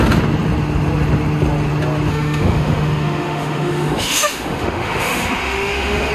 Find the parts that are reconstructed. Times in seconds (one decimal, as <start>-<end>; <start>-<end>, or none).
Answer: 2.1-6.1